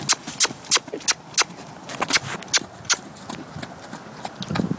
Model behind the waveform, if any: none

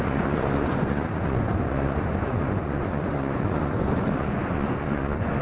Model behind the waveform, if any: vocoder, Vocos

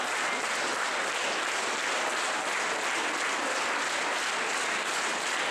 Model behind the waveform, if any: none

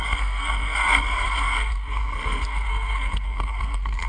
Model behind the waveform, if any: codec, SNAC